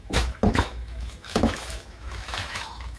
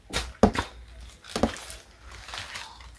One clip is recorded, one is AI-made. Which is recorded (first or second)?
second